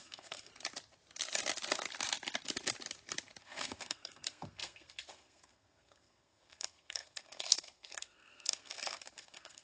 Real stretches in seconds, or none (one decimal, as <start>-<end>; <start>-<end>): 0.5-3.4